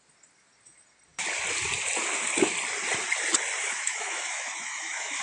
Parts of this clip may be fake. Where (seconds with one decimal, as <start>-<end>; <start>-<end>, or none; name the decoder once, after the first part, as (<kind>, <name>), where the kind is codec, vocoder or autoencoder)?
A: 3.6-5.2 (autoencoder, DAC-VAE)